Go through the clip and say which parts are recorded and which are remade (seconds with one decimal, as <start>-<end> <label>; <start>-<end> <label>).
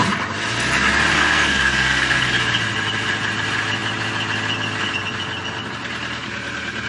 0.0-1.1 recorded; 1.1-2.3 remade; 2.3-6.9 recorded